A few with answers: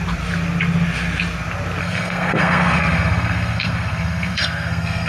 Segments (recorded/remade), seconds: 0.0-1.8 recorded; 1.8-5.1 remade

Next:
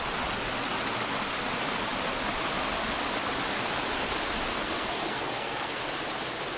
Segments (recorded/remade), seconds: 0.0-4.5 recorded; 4.5-5.8 remade; 5.8-6.6 recorded

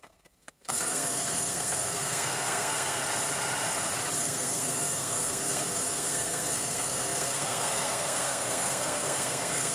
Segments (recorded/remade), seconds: 0.0-3.0 remade; 3.0-4.2 recorded; 4.2-9.7 remade

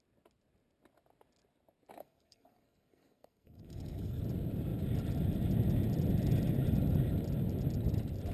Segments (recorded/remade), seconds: 0.0-2.0 recorded; 2.0-4.2 remade; 4.2-8.3 recorded

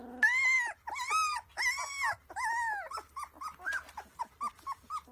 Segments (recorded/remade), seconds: 0.0-5.1 recorded

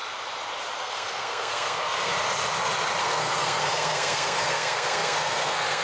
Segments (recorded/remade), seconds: 0.0-0.8 recorded; 0.8-2.1 remade; 2.1-3.0 recorded; 3.0-5.8 remade

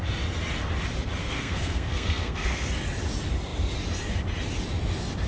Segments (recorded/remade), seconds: 0.0-1.2 recorded; 1.2-2.7 remade; 2.7-5.3 recorded

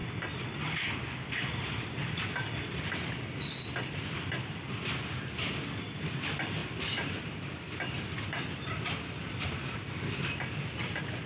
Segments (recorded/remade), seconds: 0.0-11.3 recorded